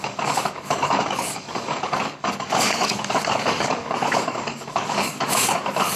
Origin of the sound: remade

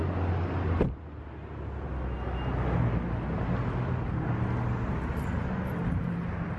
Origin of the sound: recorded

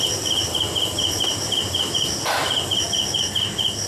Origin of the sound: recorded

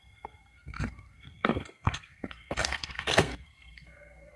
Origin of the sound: remade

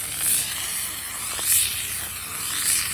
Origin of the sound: recorded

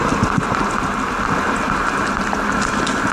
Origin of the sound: recorded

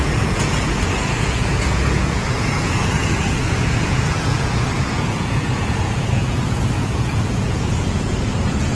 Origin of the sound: remade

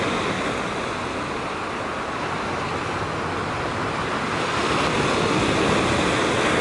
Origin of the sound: recorded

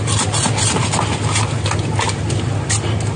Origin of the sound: recorded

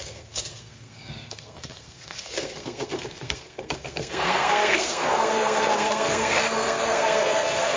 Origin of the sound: remade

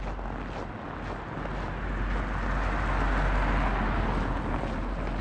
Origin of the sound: recorded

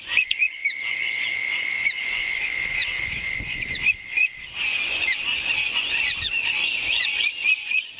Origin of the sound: remade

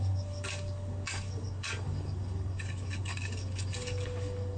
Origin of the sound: remade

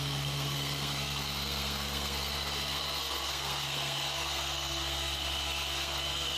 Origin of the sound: remade